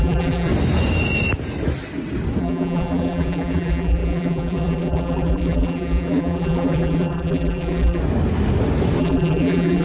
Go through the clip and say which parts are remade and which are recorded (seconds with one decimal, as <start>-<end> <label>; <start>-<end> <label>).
0.0-0.5 remade; 0.5-2.4 recorded; 2.4-8.0 remade; 8.0-9.0 recorded; 9.0-9.8 remade